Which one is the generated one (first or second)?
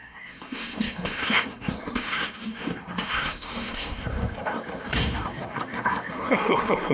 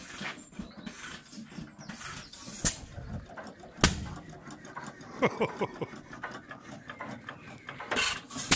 first